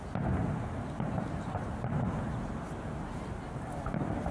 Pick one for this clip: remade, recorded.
recorded